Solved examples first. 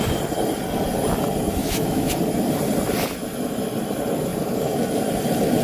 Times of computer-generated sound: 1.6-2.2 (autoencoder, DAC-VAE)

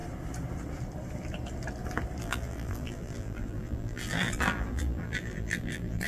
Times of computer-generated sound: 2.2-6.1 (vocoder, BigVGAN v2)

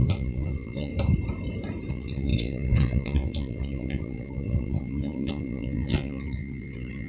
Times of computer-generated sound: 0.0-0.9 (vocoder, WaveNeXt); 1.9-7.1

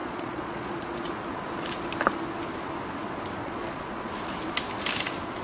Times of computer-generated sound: 0.0-1.1 (vocoder, Vocos); 3.4-4.1

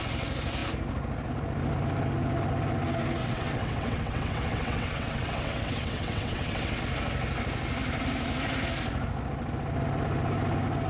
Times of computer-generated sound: 3.2-6.8 (vocoder, WaveNeXt)